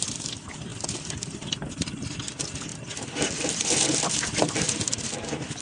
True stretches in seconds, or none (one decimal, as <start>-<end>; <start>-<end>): 0.0-5.6